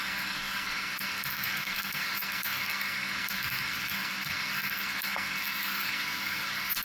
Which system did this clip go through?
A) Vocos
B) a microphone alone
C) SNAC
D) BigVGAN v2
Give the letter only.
C